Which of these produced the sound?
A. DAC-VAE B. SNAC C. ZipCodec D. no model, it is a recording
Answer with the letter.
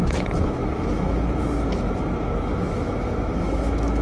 A